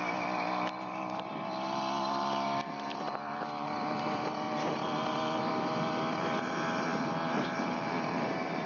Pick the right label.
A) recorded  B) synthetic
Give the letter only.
B